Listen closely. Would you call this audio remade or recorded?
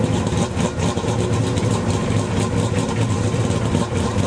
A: recorded